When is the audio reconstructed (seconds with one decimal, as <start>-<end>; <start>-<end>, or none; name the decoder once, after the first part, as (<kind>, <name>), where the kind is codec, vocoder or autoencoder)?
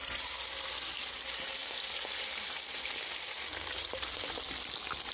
none